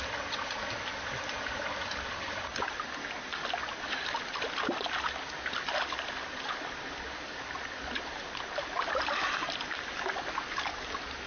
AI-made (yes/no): no